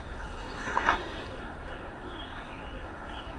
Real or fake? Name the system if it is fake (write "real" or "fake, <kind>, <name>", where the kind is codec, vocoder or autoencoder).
fake, codec, SNAC